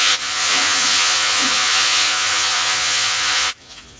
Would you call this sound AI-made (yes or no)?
yes